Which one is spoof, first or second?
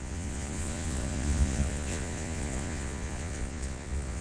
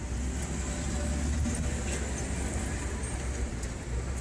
first